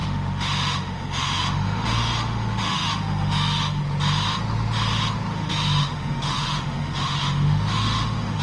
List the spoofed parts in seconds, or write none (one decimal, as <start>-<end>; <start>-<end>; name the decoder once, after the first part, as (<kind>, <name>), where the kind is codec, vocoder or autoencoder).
0.0-3.8 (autoencoder, DAC-VAE); 5.3-8.4